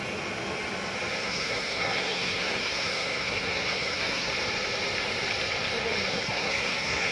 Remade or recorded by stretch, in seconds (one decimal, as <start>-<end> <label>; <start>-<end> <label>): 0.0-1.2 recorded; 1.2-4.3 remade; 4.3-6.1 recorded; 6.1-7.1 remade